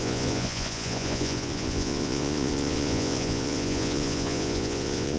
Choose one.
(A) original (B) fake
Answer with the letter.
B